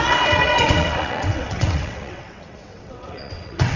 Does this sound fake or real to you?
fake